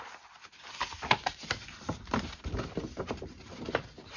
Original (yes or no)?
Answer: yes